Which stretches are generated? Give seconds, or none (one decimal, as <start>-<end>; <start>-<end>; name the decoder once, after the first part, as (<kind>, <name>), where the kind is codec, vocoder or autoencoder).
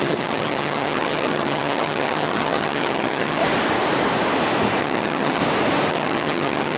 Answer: 0.0-3.4 (vocoder, HiFi-GAN); 4.8-5.4; 5.9-6.8